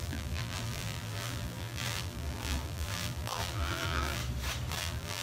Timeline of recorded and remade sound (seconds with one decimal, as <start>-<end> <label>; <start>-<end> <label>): 0.0-4.2 remade; 4.2-4.7 recorded; 4.7-5.2 remade